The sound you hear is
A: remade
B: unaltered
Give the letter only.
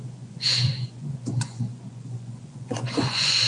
A